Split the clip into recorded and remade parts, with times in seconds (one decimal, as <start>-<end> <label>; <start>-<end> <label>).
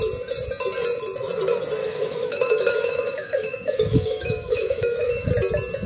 0.0-1.8 recorded; 1.8-5.3 remade; 5.3-5.9 recorded